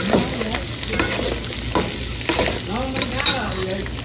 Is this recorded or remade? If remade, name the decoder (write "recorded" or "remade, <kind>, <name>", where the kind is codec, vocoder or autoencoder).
recorded